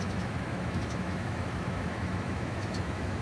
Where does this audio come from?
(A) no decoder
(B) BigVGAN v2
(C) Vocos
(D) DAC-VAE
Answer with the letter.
D